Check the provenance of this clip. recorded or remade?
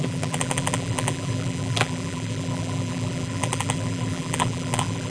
remade